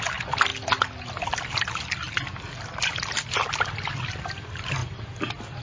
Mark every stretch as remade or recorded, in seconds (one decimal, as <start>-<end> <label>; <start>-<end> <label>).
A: 0.0-5.6 recorded

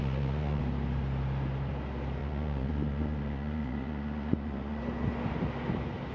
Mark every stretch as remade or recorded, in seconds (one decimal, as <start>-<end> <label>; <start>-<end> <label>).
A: 0.0-0.6 remade; 0.6-2.2 recorded; 2.2-4.8 remade; 4.8-6.1 recorded

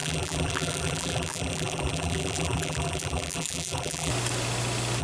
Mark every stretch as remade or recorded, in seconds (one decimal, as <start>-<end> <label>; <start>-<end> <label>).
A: 0.0-4.1 remade; 4.1-5.0 recorded